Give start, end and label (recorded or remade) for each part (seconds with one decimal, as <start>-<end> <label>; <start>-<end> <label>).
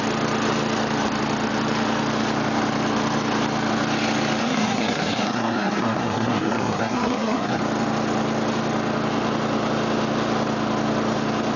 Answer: 0.0-4.4 recorded; 4.4-7.6 remade; 7.6-11.6 recorded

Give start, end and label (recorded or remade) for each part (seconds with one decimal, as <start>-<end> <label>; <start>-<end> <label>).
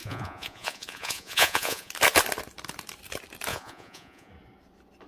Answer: 0.0-1.9 remade; 1.9-3.5 recorded; 3.5-4.3 remade; 4.3-5.1 recorded